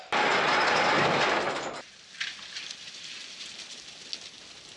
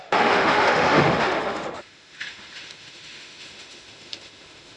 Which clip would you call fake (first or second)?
second